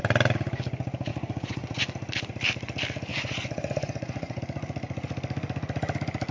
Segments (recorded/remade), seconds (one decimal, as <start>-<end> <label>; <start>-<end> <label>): 0.0-1.1 recorded; 1.1-1.8 remade; 1.8-3.1 recorded; 3.1-4.4 remade; 4.4-6.3 recorded